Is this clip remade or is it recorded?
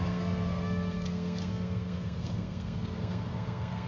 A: remade